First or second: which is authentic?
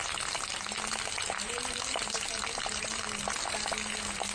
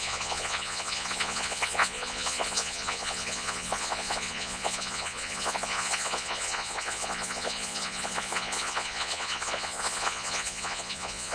first